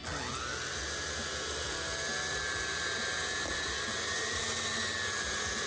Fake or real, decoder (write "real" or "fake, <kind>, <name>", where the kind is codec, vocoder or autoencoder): real